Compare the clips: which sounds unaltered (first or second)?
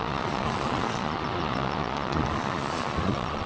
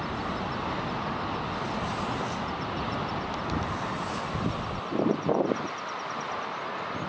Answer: second